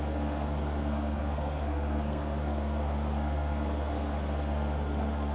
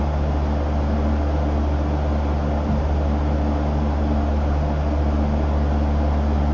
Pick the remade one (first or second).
first